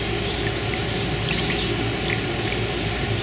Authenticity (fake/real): real